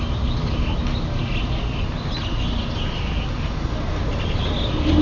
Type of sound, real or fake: real